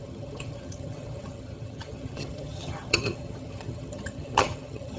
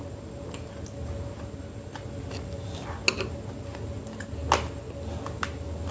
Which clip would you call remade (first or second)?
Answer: first